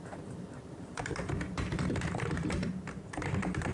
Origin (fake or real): fake